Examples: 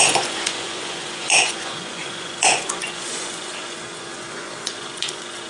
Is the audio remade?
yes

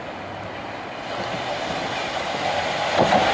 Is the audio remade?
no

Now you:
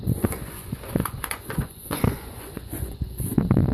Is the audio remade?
yes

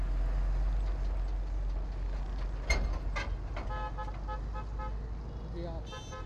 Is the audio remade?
no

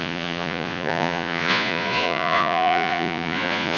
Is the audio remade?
yes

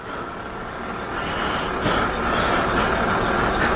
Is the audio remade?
no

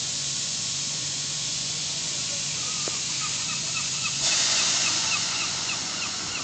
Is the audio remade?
yes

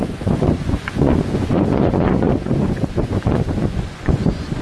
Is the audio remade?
yes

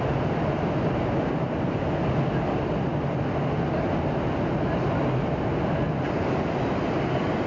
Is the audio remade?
no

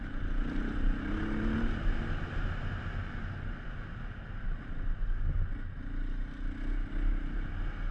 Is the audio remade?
no